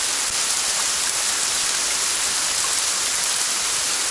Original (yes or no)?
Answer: yes